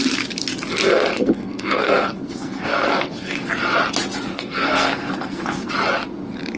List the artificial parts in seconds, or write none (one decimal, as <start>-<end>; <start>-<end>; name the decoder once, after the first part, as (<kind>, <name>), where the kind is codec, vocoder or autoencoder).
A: 1.1-3.5 (codec, SNAC); 4.3-5.7